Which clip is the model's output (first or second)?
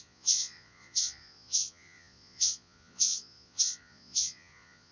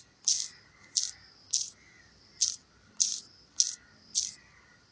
first